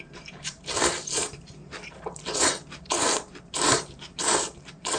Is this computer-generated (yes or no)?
yes